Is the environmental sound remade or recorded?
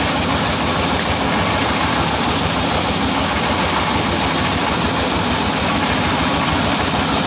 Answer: recorded